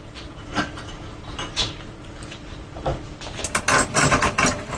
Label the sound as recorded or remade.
recorded